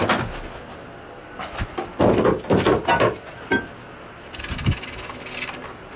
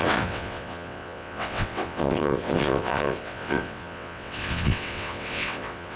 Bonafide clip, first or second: first